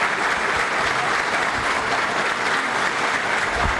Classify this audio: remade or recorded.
remade